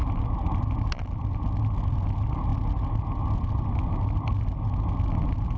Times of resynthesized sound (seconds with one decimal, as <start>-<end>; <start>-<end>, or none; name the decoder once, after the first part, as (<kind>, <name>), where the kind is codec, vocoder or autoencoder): none